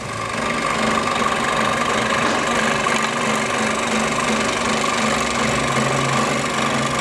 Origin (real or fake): real